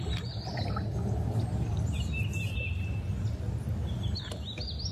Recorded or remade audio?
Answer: recorded